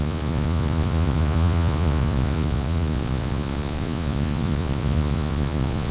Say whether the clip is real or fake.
fake